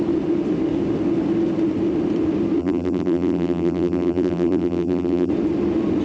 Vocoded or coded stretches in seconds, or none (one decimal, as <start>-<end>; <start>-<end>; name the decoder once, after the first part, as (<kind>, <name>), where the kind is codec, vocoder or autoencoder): 2.6-5.3 (vocoder, BigVGAN v2)